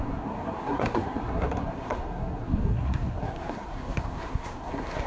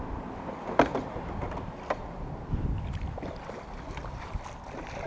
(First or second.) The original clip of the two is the second